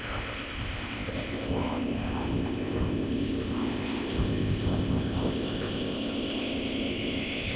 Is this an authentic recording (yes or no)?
no